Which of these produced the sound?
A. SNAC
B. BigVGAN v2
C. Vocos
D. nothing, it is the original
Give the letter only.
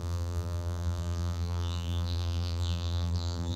B